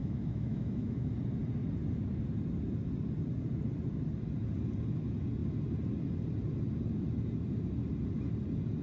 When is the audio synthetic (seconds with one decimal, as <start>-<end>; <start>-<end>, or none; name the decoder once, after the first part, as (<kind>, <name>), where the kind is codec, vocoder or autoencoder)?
0.0-1.1 (autoencoder, DAC-VAE)